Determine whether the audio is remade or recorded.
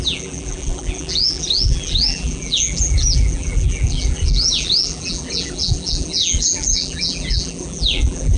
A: remade